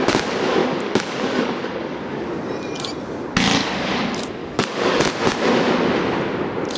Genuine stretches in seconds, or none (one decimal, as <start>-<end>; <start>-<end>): 0.0-0.6; 2.3-4.4; 5.1-6.8